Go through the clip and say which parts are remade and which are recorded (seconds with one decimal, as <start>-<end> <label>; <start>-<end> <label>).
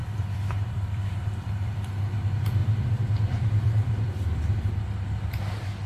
0.0-2.0 remade; 2.0-2.6 recorded; 2.6-4.7 remade; 4.7-5.9 recorded